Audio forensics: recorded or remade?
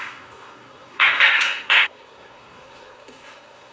remade